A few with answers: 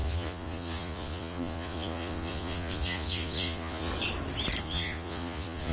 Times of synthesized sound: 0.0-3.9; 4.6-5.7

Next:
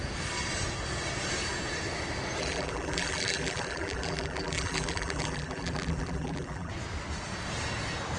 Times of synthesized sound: 2.4-6.7

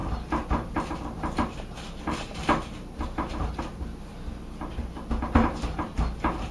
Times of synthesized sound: none

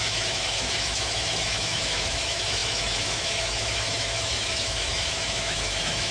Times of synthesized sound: 0.0-6.1

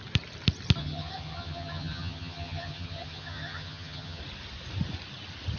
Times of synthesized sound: 0.8-4.2

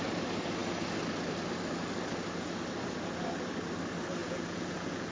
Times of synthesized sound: 4.2-5.1

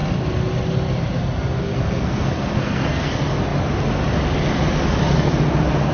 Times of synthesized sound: 1.7-3.1